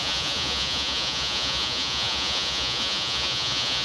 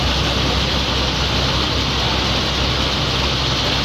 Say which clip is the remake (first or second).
first